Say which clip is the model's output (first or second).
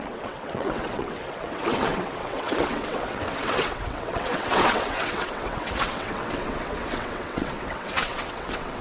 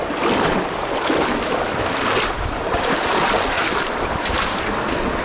first